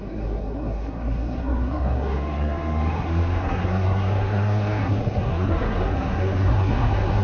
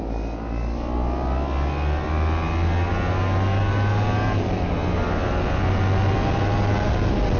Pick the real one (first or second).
second